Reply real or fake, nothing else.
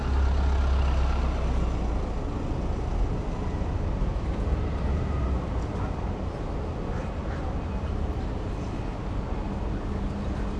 real